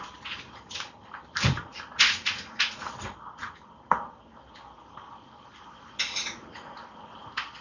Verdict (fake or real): real